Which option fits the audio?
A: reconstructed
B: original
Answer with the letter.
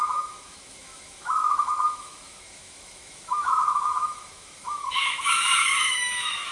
A